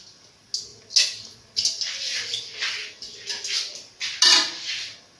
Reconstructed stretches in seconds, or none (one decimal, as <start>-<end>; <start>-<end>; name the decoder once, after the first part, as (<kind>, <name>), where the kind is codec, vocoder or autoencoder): none